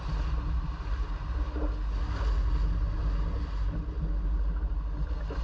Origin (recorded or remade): recorded